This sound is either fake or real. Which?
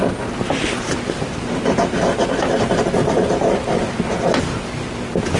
real